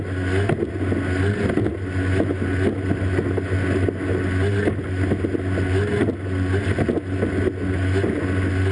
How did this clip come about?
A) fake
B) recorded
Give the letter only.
B